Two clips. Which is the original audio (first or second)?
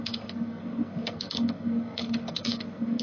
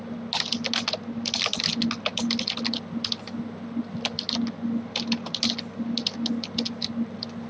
second